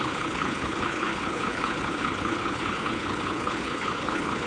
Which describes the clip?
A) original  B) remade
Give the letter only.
B